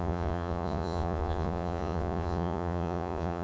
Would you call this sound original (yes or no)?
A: no